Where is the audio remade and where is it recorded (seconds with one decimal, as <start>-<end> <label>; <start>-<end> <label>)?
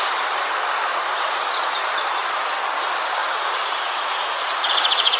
0.0-0.9 recorded; 0.9-1.4 remade; 1.4-3.2 recorded; 3.2-5.2 remade